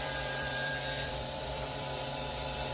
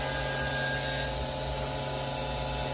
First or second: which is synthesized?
first